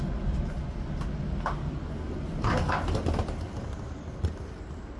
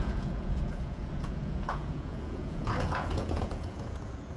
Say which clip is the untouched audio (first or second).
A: first